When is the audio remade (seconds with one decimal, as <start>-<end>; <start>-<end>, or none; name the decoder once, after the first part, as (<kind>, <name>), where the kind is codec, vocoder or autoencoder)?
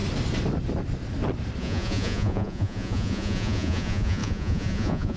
1.6-5.2 (vocoder, Vocos)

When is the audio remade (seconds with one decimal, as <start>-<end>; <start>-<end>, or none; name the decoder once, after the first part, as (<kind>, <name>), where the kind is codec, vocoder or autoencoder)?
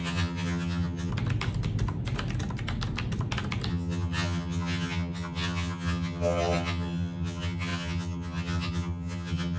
0.0-1.1 (vocoder, HiFi-GAN); 3.7-9.6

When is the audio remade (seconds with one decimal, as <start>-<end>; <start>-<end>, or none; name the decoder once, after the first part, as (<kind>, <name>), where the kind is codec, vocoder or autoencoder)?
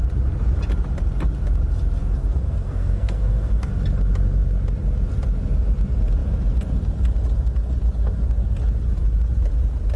2.0-3.7 (codec, SNAC)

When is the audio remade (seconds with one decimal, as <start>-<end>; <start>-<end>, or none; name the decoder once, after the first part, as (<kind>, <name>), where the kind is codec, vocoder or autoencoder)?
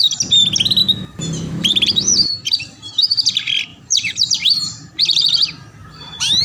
0.8-2.9 (vocoder, BigVGAN v2); 3.7-5.0; 5.8-6.4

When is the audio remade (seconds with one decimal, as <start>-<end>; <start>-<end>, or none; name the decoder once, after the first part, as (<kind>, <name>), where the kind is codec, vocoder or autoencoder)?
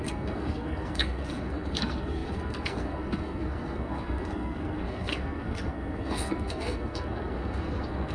0.0-8.1 (codec, SNAC)